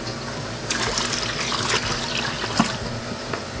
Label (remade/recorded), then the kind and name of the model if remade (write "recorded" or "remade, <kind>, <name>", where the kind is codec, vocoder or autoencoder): recorded